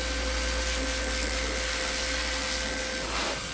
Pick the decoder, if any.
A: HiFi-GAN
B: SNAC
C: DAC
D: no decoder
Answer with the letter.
D